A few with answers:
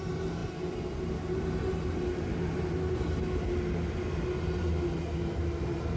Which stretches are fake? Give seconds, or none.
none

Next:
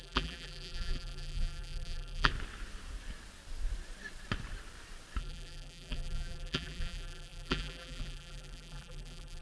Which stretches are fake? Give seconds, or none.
0.0-2.3 (vocoder, BigVGAN v2); 5.2-9.4

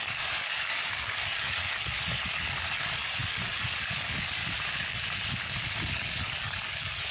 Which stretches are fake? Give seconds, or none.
0.0-4.4 (codec, DAC); 5.9-7.1

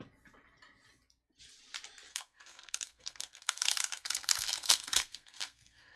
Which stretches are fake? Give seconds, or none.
2.1-6.0 (codec, SNAC)

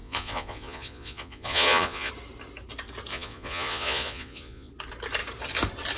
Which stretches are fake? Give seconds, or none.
0.0-2.1 (vocoder, Vocos); 3.1-4.7

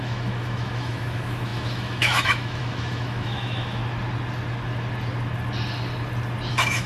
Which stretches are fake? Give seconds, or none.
0.0-3.8 (autoencoder, DAC-VAE); 6.5-6.9

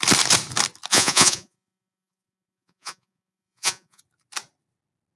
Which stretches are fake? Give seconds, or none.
0.9-4.0 (vocoder, Vocos)

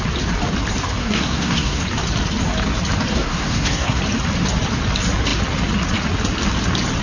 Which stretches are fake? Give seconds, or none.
1.0-1.8 (codec, SNAC); 3.1-4.0